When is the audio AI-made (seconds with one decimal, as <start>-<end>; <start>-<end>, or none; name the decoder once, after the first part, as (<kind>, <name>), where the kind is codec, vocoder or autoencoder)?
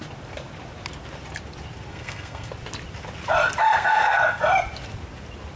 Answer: 1.9-2.5 (codec, SNAC); 3.7-4.4